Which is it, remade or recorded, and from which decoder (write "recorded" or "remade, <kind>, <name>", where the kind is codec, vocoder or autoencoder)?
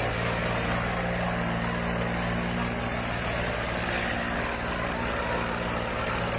recorded